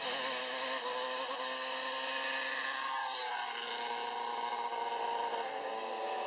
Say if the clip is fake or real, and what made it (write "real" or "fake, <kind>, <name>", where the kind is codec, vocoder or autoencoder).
real